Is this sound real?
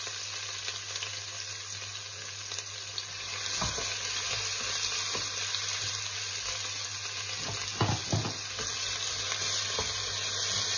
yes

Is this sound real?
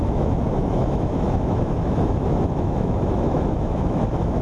no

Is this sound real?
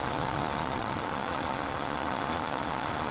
no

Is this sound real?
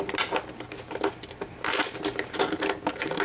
yes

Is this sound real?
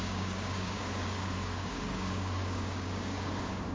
no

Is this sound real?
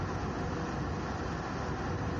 yes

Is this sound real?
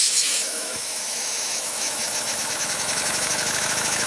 no